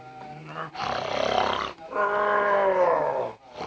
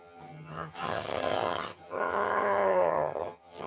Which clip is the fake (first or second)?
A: second